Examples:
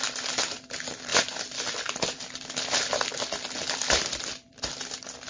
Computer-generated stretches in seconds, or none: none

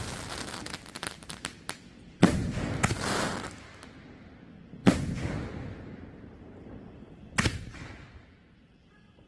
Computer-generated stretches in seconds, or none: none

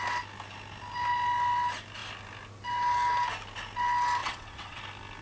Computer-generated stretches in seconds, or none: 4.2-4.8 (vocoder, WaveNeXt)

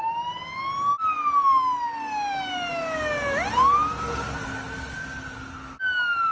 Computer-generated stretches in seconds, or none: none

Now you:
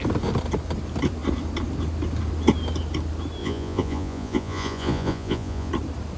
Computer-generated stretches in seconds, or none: 3.4-5.7 (vocoder, Vocos)

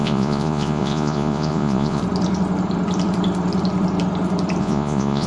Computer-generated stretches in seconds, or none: 0.0-2.0 (vocoder, Vocos); 4.6-5.3

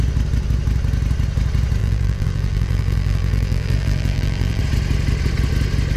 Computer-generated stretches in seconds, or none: 1.8-4.6 (vocoder, BigVGAN v2)